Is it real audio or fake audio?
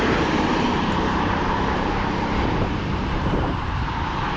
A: fake